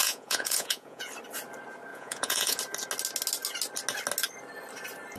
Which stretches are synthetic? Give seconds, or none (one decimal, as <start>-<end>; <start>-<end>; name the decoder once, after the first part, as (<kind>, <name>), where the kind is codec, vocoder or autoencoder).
0.0-1.1 (vocoder, Vocos); 1.9-2.6